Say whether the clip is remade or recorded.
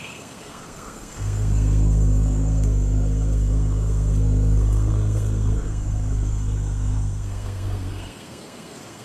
remade